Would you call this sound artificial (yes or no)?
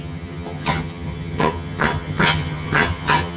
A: yes